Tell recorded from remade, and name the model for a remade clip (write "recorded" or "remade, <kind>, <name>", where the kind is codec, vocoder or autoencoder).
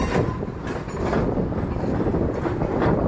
recorded